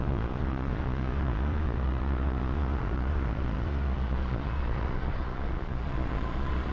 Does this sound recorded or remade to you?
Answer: remade